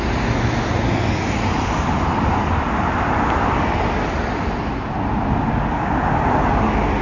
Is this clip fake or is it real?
real